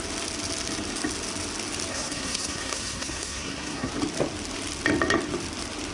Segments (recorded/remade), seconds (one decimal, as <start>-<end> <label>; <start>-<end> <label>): 0.0-1.9 recorded; 1.9-3.9 remade; 3.9-5.9 recorded